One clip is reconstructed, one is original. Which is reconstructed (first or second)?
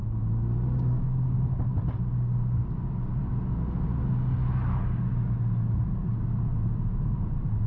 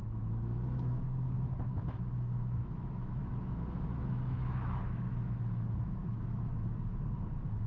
second